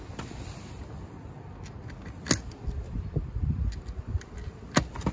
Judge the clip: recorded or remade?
recorded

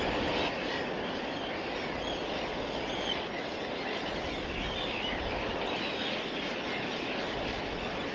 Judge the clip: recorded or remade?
recorded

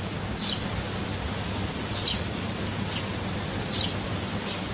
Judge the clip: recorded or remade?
recorded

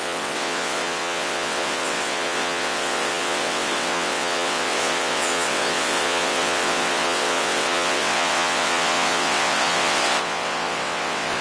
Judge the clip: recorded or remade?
remade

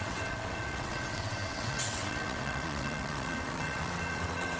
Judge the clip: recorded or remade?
remade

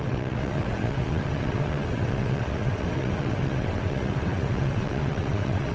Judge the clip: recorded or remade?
remade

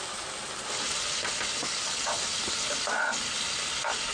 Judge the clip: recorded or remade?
recorded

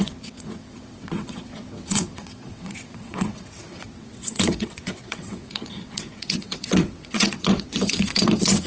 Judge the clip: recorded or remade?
remade